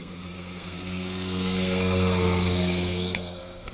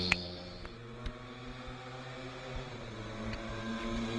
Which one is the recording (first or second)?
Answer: second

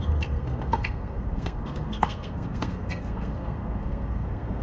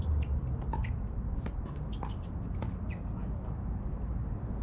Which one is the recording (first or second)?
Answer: second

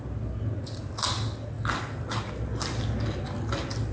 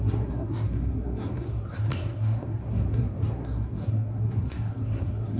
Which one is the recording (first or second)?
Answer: first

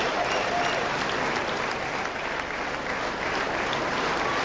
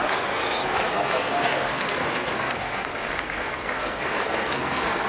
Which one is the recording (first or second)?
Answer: first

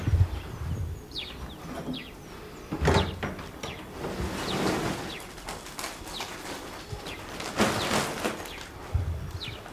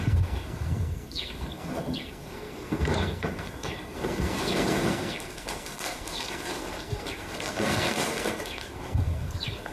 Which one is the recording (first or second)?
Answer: first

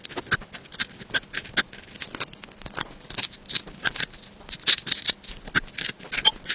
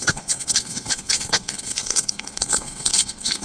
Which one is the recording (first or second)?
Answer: first